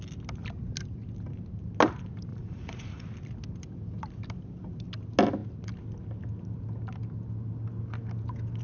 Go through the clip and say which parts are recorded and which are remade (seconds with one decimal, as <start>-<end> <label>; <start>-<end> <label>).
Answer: 0.0-2.3 recorded; 2.3-3.0 remade; 3.0-8.6 recorded